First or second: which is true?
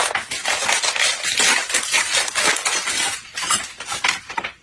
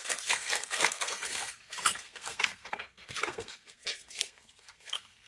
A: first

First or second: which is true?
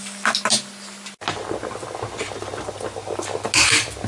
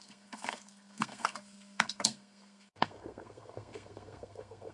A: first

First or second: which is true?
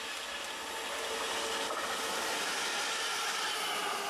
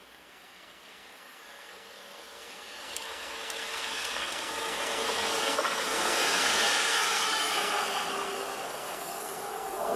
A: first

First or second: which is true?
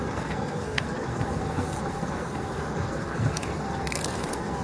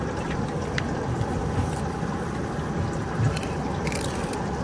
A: second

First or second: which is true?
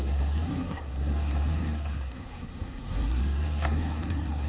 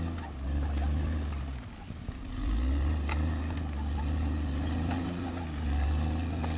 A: second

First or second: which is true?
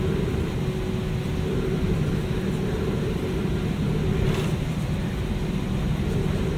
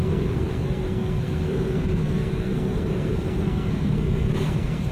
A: first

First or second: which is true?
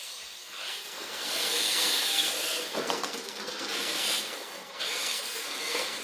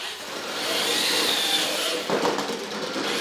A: second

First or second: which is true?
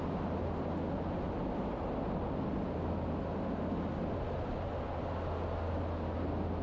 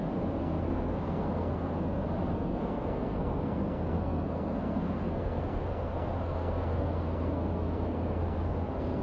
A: first